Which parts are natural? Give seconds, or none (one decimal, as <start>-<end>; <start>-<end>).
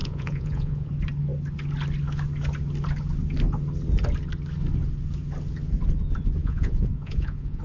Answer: 0.9-6.4